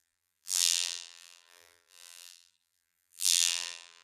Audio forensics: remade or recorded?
remade